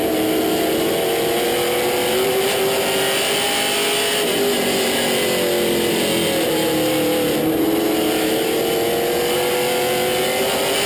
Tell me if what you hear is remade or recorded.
recorded